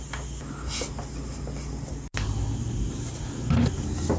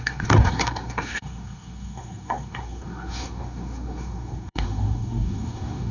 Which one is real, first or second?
first